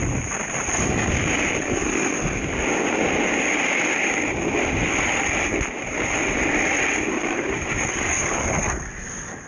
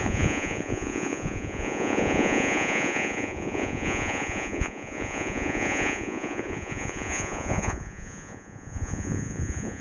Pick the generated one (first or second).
second